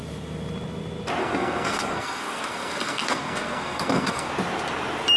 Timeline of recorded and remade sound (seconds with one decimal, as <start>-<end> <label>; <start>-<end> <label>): 0.0-1.2 recorded; 1.2-4.3 remade; 4.3-5.2 recorded